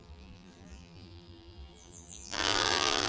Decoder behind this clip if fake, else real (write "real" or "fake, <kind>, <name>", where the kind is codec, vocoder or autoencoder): fake, vocoder, BigVGAN v2